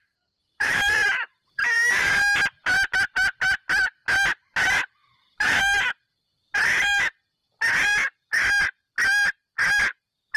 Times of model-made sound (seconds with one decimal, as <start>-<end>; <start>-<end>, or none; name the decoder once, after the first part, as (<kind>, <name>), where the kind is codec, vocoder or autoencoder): 0.4-2.1 (vocoder, BigVGAN v2); 5.0-5.6